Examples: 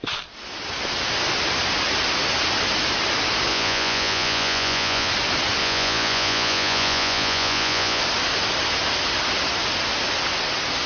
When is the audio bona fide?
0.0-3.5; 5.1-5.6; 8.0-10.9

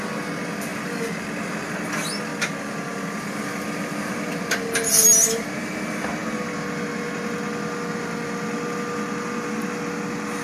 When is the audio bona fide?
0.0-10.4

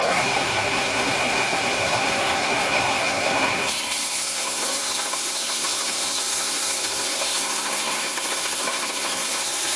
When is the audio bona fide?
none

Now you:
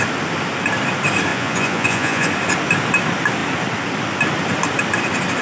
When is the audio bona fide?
0.0-1.3; 2.3-5.4

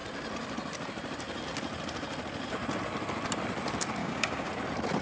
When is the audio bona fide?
0.0-4.0; 4.5-5.0

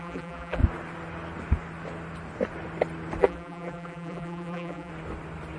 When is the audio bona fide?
0.6-3.2; 4.9-5.6

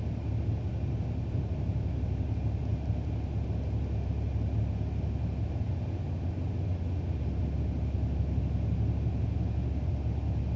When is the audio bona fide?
0.0-10.6